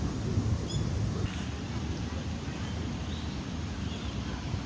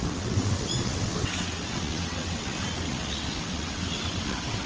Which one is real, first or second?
first